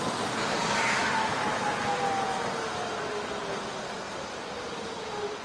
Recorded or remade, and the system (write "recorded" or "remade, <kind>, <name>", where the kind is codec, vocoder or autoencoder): recorded